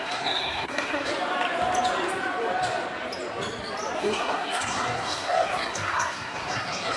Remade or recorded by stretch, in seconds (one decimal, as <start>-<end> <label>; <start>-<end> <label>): 0.0-1.1 remade; 1.1-4.0 recorded; 4.0-7.0 remade